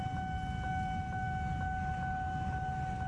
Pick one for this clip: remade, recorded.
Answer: recorded